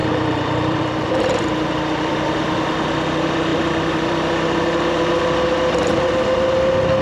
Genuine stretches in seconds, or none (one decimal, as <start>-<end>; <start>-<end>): 2.1-3.5; 4.3-7.0